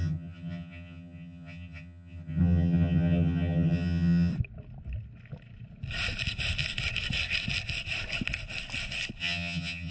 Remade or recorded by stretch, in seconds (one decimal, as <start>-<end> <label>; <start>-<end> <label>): 0.0-4.3 remade; 4.3-9.2 recorded; 9.2-9.9 remade